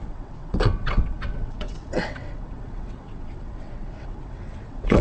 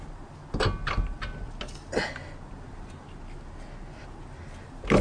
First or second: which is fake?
first